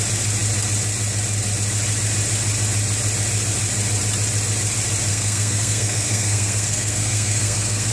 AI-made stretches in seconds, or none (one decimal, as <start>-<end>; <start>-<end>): 5.1-7.9